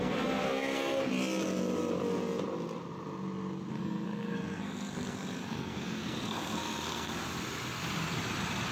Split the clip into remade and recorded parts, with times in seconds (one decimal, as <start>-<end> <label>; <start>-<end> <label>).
0.0-1.1 remade; 1.1-3.7 recorded; 3.7-7.1 remade; 7.1-8.7 recorded